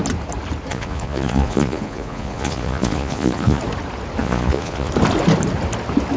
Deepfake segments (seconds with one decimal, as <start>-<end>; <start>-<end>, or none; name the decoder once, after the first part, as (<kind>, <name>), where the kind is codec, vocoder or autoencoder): 0.7-3.6 (vocoder, Vocos); 4.2-4.9